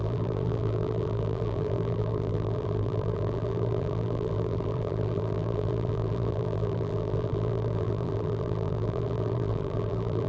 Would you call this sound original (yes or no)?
no